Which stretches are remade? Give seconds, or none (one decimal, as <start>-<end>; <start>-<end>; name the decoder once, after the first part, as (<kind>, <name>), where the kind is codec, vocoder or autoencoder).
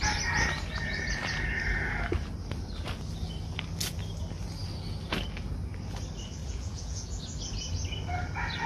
6.4-7.2 (vocoder, Vocos)